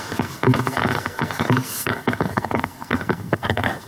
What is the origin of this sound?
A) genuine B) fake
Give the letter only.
B